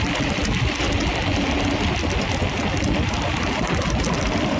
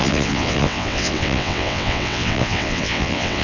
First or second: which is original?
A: first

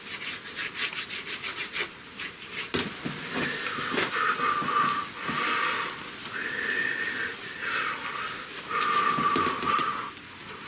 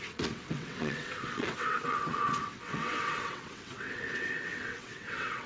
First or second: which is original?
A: first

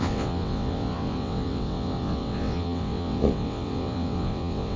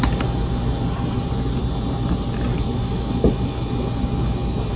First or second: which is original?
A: second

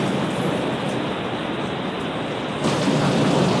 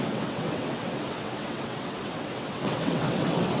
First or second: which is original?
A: first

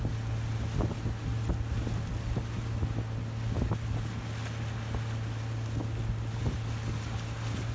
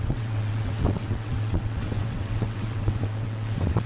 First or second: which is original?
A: first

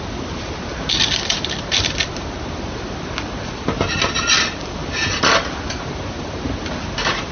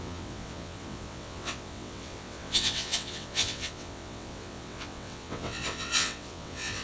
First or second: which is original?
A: first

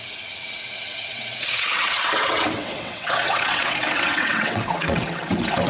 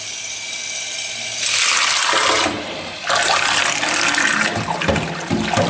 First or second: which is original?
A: second